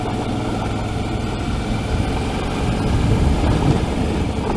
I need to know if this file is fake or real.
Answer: real